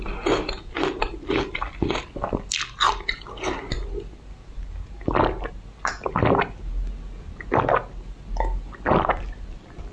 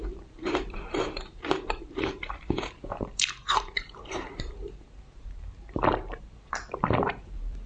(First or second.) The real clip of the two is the first